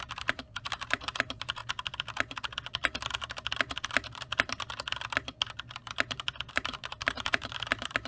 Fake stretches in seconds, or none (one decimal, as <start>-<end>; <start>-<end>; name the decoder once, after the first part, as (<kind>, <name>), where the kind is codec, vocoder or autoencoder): 0.0-1.6 (vocoder, BigVGAN v2); 6.5-8.1